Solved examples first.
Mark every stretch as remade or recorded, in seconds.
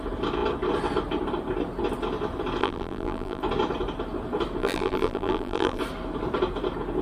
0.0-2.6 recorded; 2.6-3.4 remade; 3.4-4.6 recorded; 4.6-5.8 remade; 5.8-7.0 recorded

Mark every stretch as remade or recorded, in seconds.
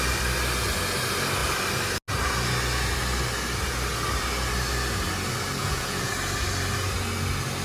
0.0-5.6 recorded; 5.6-6.1 remade; 6.1-7.6 recorded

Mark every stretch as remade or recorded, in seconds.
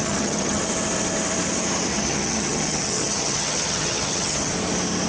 0.0-0.6 remade; 0.6-1.9 recorded; 1.9-4.5 remade; 4.5-5.1 recorded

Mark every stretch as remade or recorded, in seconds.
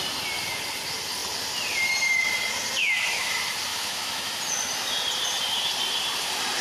0.0-2.8 recorded; 2.8-3.3 remade; 3.3-3.7 recorded; 3.7-4.4 remade; 4.4-6.6 recorded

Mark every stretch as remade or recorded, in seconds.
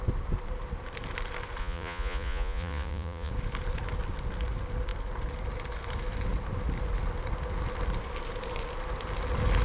0.0-1.6 recorded; 1.6-3.3 remade; 3.3-9.6 recorded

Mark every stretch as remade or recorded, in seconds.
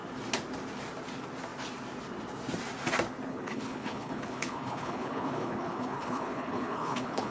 0.0-3.3 recorded; 3.3-7.3 remade